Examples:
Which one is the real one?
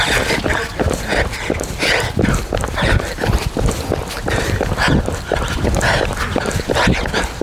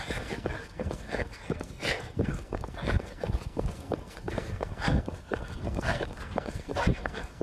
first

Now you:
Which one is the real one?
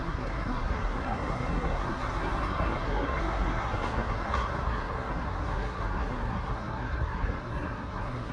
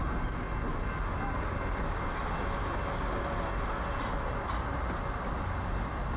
second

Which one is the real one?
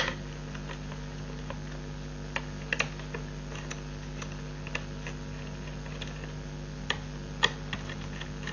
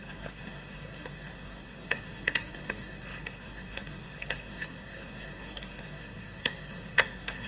first